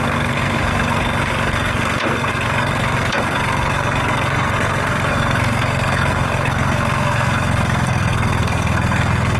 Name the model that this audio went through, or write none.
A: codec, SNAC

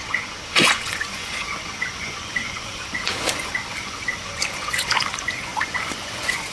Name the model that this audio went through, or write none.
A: vocoder, Vocos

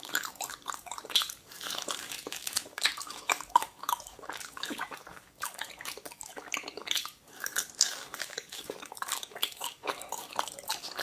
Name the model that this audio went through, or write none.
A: codec, DAC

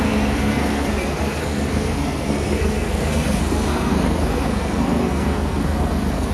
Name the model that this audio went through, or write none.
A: codec, SNAC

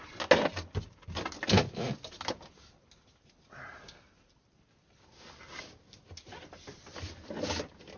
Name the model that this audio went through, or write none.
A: none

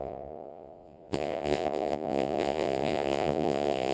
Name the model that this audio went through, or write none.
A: vocoder, Vocos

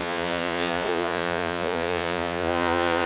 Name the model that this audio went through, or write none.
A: vocoder, Vocos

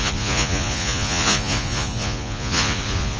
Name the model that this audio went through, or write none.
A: vocoder, Vocos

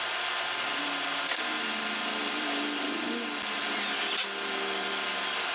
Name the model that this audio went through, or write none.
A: none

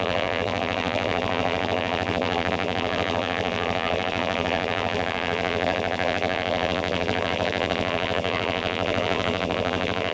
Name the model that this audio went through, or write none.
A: vocoder, BigVGAN v2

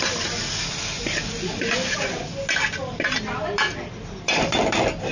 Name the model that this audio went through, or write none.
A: none